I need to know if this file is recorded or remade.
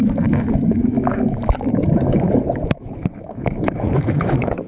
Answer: remade